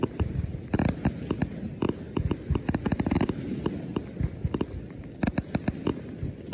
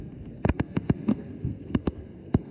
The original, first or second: first